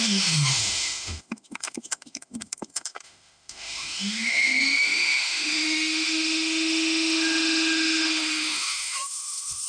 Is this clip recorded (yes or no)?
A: no